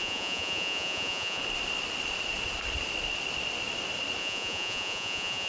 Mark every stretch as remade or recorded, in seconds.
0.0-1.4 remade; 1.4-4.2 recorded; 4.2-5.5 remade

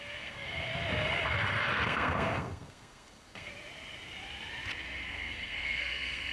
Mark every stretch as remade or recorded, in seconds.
0.0-0.7 remade; 0.7-1.7 recorded; 1.7-3.5 remade; 3.5-5.1 recorded; 5.1-6.3 remade

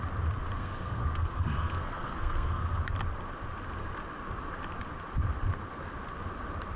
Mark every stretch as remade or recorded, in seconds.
0.0-0.6 recorded; 0.6-2.8 remade; 2.8-6.8 recorded

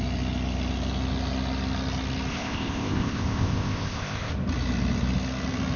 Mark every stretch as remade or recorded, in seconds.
0.0-2.3 recorded; 2.3-4.3 remade; 4.3-5.8 recorded

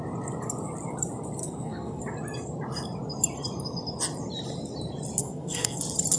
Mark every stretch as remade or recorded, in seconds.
0.0-1.4 recorded; 1.4-2.0 remade; 2.0-5.2 recorded; 5.2-5.8 remade; 5.8-6.2 recorded